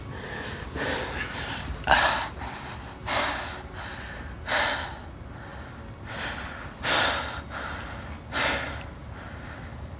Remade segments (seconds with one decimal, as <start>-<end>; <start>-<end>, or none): none